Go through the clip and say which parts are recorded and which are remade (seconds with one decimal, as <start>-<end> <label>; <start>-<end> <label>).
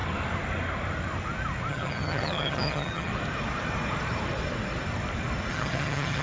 0.0-1.7 recorded; 1.7-3.1 remade; 3.1-5.5 recorded; 5.5-6.2 remade